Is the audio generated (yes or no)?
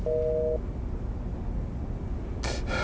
no